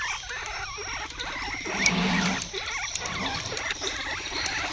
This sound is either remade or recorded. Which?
recorded